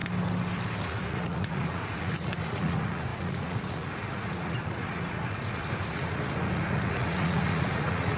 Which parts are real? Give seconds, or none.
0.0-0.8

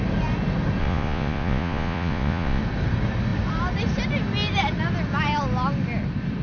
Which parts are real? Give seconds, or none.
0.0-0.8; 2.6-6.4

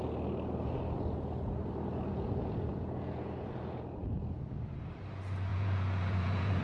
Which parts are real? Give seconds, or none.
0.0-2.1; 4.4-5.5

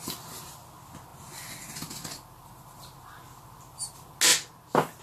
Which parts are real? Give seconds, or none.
0.0-5.0

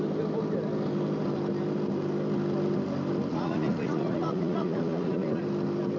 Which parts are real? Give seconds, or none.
0.0-3.3; 5.4-6.0

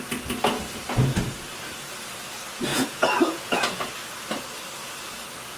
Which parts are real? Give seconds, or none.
0.0-2.7; 3.9-5.6